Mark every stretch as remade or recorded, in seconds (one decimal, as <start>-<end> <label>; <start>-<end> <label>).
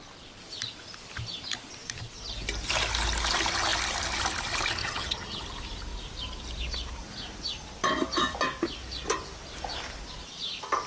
0.0-4.8 recorded; 4.8-5.4 remade; 5.4-10.9 recorded